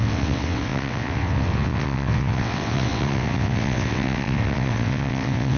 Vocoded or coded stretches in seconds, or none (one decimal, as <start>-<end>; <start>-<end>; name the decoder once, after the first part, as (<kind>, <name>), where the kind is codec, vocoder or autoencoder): 0.0-5.6 (vocoder, WaveNeXt)